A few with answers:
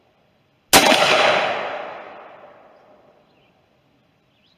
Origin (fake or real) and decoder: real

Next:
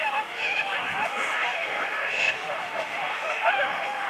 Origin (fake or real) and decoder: fake, autoencoder, DAC-VAE